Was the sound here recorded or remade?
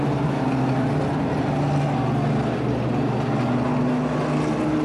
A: recorded